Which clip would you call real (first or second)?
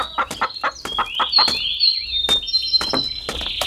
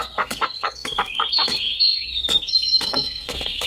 first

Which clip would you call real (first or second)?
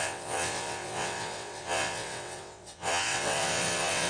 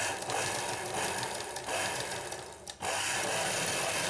second